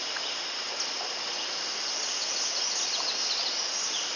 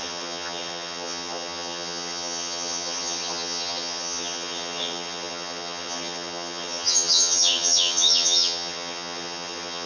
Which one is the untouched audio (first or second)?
first